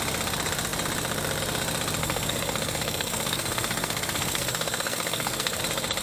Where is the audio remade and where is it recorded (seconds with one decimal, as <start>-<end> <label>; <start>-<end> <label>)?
0.0-2.0 recorded; 2.0-5.6 remade; 5.6-6.0 recorded